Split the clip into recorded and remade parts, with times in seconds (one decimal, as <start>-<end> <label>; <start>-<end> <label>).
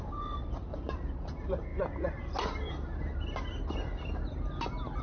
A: 0.0-5.0 recorded